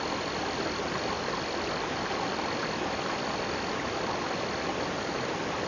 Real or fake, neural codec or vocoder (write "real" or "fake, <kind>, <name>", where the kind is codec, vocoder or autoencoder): real